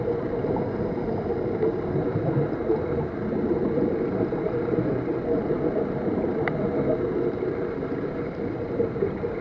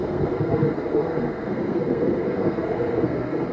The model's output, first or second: second